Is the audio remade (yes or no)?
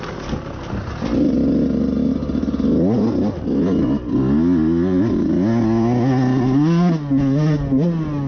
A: no